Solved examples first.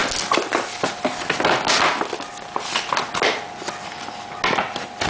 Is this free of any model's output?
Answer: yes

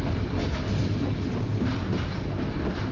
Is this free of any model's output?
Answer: yes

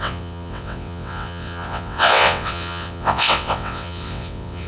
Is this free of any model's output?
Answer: no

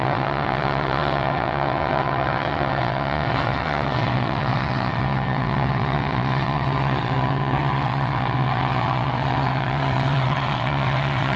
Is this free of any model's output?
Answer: no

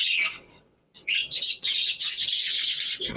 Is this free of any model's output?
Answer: no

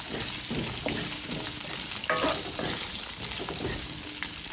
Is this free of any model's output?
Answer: yes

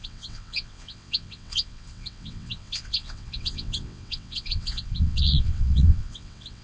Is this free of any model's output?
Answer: no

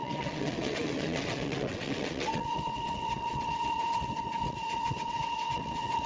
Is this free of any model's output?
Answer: no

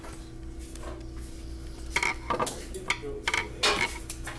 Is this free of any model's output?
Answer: yes